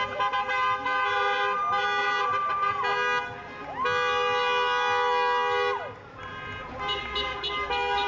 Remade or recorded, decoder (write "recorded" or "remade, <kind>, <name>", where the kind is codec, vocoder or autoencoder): recorded